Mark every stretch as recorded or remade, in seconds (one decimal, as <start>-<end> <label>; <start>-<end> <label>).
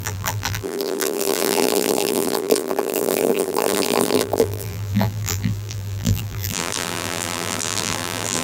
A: 0.0-8.4 remade